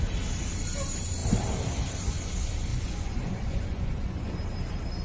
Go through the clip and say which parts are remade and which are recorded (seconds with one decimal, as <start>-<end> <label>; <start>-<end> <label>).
0.0-2.7 recorded; 2.7-4.3 remade; 4.3-5.0 recorded